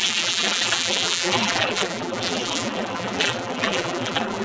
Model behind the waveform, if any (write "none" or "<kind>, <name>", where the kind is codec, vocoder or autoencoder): vocoder, BigVGAN v2